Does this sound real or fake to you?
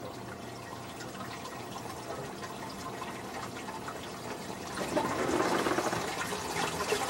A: fake